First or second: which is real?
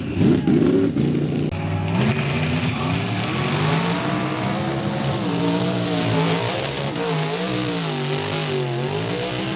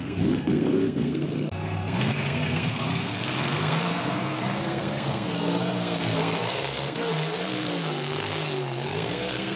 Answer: first